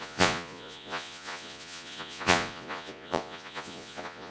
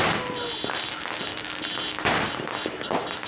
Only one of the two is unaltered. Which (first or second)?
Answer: second